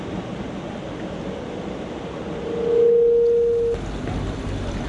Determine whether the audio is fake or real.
real